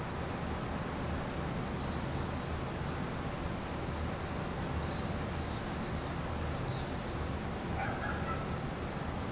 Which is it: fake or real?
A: real